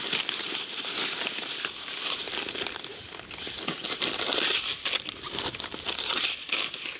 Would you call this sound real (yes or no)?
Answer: yes